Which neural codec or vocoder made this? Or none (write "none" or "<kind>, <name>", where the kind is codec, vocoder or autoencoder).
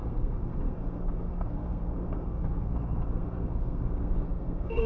codec, SNAC